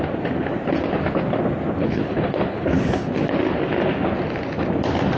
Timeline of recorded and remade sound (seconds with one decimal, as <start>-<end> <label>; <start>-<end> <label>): 0.0-1.8 recorded; 1.8-3.4 remade; 3.4-5.2 recorded